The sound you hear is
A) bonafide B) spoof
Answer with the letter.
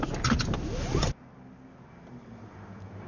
A